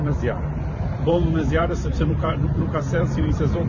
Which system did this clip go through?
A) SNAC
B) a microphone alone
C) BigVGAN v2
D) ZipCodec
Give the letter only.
C